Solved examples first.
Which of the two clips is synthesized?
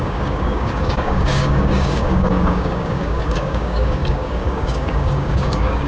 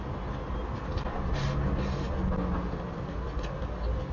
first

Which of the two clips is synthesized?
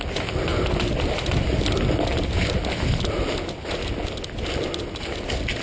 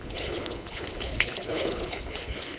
second